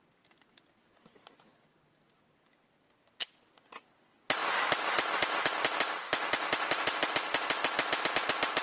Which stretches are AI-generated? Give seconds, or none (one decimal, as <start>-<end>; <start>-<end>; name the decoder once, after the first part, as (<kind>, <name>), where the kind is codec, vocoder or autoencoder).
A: none